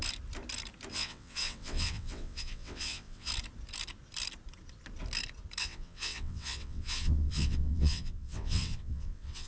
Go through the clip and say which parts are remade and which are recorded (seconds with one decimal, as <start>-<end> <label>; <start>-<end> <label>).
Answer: 0.0-0.9 recorded; 0.9-3.3 remade; 3.3-5.6 recorded; 5.6-9.5 remade